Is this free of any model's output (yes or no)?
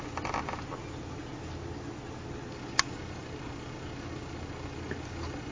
yes